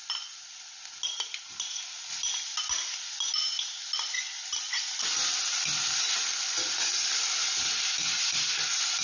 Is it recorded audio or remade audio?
recorded